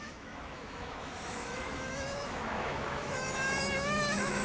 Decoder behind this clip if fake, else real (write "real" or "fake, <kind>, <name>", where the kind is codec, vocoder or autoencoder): fake, autoencoder, DAC-VAE